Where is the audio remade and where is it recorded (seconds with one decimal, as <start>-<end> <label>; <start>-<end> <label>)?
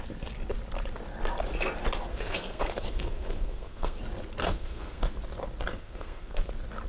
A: 0.0-2.1 recorded; 2.1-4.0 remade; 4.0-4.4 recorded; 4.4-5.0 remade; 5.0-5.7 recorded; 5.7-6.5 remade; 6.5-6.9 recorded